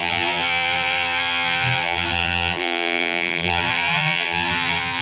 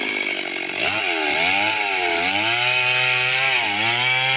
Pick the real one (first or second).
second